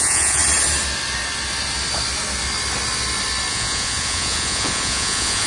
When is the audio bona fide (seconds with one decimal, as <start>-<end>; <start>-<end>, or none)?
0.4-3.5